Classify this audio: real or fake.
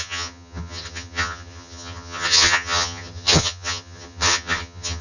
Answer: fake